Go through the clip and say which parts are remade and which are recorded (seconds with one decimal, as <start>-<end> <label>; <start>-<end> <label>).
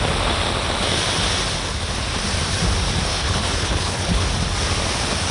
0.0-3.1 recorded; 3.1-4.2 remade; 4.2-5.3 recorded